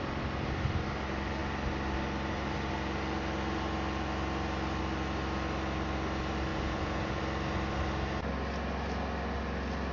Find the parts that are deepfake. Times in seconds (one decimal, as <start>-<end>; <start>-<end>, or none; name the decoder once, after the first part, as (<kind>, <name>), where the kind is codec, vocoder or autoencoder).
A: 6.5-7.2 (vocoder, Vocos)